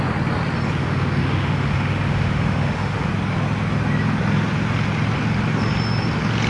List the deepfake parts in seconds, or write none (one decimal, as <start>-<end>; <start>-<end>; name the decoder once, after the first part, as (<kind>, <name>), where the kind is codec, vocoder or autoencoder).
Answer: 0.8-3.1 (autoencoder, DAC-VAE)